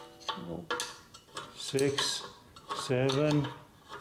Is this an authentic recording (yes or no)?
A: yes